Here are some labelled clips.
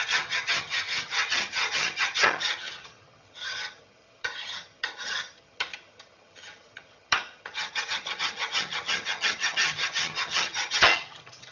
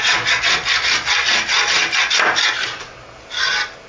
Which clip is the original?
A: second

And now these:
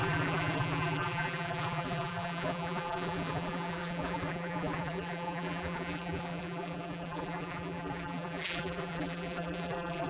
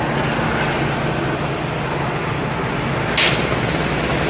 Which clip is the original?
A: second